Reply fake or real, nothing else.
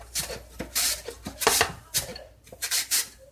fake